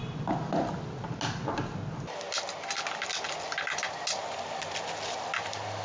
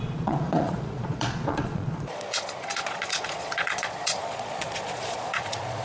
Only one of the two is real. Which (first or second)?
first